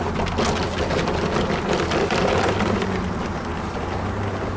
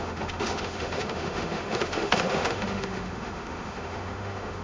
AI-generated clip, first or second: second